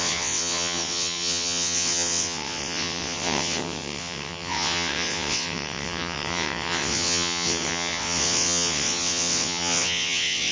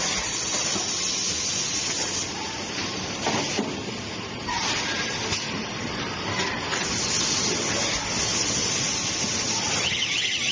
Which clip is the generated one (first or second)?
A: first